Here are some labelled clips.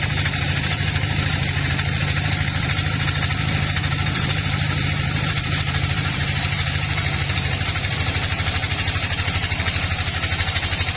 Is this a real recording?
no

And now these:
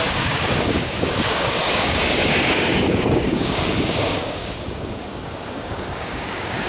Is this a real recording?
no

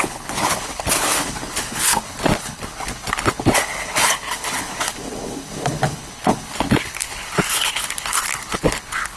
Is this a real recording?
no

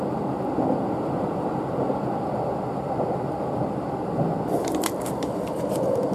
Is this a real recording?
no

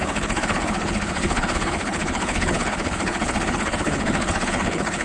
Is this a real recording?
no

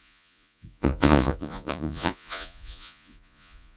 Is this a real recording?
no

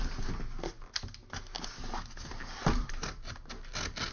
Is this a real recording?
yes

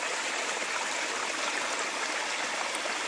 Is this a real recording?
yes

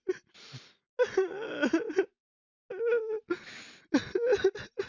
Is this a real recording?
yes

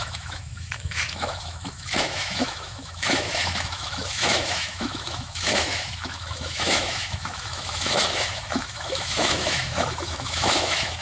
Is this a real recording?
no